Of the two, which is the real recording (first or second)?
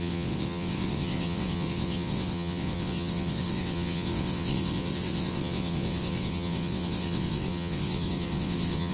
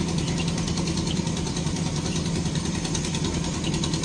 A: second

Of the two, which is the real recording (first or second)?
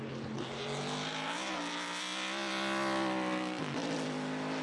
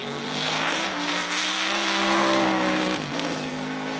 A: first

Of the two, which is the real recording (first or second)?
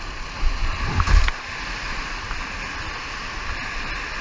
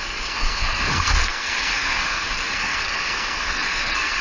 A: first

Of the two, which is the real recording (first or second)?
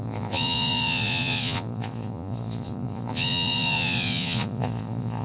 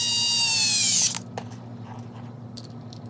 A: second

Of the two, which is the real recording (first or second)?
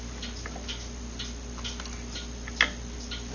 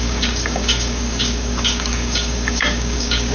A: first